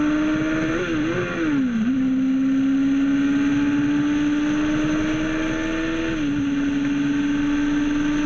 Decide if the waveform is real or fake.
real